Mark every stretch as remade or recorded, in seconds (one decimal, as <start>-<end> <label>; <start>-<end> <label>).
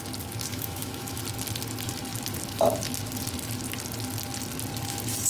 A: 0.0-0.5 recorded; 0.5-1.2 remade; 1.2-5.3 recorded